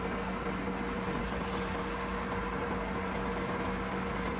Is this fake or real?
real